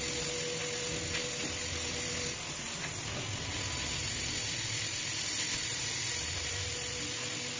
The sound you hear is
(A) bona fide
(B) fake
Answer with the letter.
A